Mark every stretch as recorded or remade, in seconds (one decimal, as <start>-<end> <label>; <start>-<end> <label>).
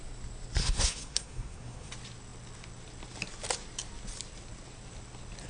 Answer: 0.0-0.6 recorded; 0.6-1.9 remade; 1.9-5.5 recorded